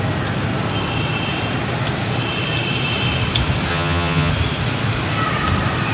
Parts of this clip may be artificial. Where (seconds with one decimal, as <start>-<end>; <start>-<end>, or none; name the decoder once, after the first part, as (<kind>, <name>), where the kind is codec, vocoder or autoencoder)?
3.7-4.3 (vocoder, HiFi-GAN)